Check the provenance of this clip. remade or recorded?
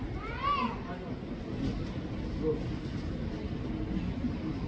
recorded